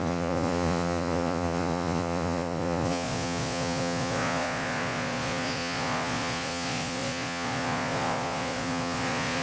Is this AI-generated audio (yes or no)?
yes